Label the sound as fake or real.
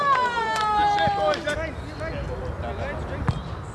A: real